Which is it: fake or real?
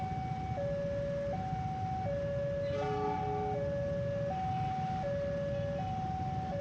real